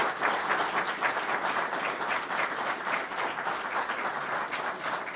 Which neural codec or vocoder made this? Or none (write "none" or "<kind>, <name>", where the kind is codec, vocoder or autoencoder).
none